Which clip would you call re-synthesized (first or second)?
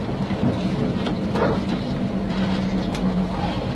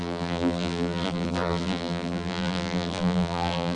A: second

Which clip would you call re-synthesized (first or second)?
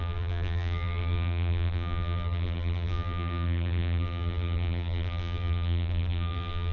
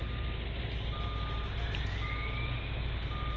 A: first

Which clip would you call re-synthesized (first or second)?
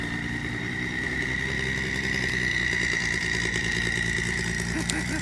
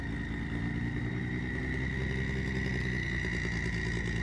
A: first